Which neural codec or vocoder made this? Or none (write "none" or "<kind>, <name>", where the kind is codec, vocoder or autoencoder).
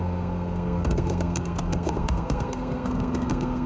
codec, SNAC